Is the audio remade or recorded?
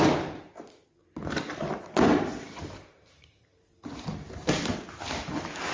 recorded